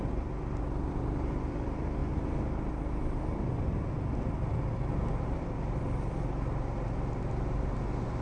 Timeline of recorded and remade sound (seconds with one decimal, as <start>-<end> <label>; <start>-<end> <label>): 0.0-8.2 recorded